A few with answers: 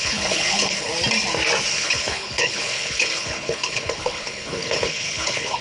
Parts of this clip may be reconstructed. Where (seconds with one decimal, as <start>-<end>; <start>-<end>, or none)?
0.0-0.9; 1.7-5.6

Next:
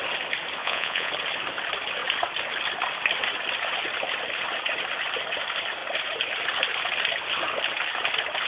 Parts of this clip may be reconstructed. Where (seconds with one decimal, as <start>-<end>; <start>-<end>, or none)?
0.6-1.1

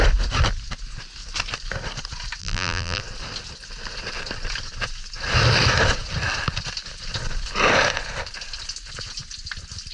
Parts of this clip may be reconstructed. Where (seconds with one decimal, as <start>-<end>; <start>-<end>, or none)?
2.4-3.0